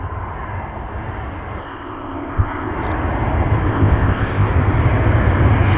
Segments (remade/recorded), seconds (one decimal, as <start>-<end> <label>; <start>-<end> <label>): 0.0-1.6 recorded; 1.6-2.7 remade; 2.7-3.7 recorded; 3.7-4.5 remade; 4.5-5.8 recorded